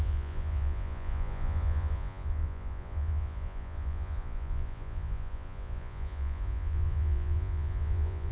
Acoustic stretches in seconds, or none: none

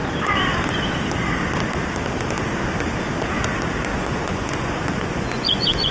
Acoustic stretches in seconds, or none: 0.0-3.9

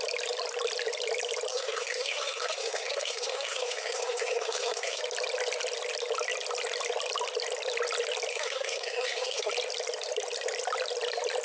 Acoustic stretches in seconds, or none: 0.0-1.5; 5.0-8.3; 9.5-11.4

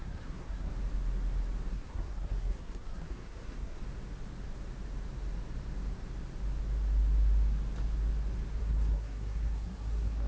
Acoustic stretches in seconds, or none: 0.7-1.7; 3.8-8.6

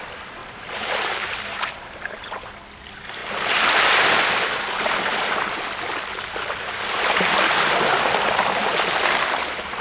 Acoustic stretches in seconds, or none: 0.0-0.4; 2.5-9.8

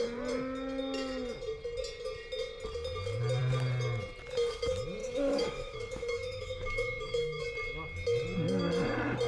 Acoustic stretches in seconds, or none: 0.0-5.0; 7.4-9.3

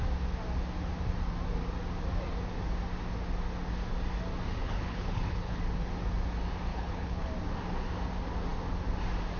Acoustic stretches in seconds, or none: 0.0-4.6; 5.6-6.7; 7.3-9.4